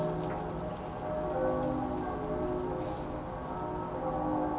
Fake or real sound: real